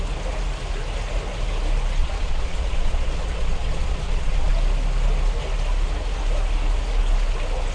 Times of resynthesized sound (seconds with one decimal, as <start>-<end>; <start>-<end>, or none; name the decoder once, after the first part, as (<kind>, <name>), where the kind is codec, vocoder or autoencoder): 2.0-4.5 (vocoder, Vocos)